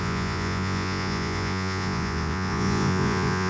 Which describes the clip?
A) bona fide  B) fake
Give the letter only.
B